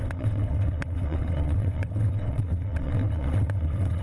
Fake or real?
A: fake